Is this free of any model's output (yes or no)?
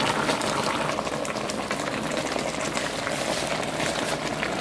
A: yes